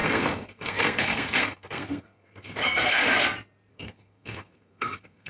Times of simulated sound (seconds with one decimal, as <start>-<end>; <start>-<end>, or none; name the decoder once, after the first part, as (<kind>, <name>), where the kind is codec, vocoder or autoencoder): 0.0-3.0 (codec, SNAC); 3.7-5.3